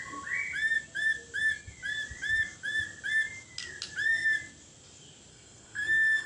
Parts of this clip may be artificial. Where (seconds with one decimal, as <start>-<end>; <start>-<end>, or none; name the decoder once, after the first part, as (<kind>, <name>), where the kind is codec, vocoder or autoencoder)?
5.3-6.3 (codec, SNAC)